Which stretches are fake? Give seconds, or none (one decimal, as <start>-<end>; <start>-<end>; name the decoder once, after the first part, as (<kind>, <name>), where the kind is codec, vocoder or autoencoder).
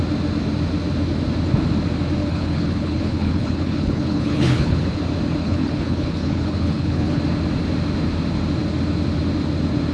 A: 2.2-4.9 (codec, HILCodec); 5.4-7.2